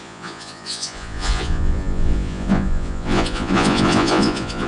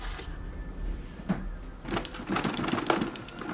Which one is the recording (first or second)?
second